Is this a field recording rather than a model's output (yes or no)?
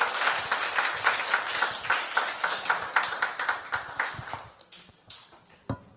yes